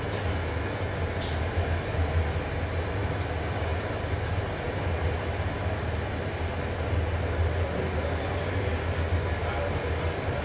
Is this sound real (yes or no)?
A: yes